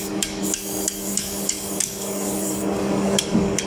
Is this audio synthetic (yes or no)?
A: yes